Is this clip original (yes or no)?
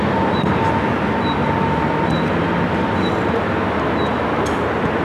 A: yes